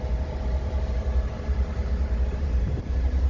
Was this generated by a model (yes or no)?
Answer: yes